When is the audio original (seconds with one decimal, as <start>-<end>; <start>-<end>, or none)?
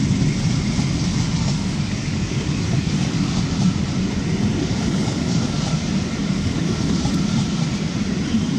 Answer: 0.0-1.1; 3.4-4.5; 5.6-6.2; 7.3-8.6